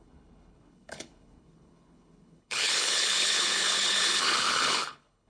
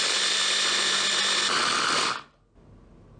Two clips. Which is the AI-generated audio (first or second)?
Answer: first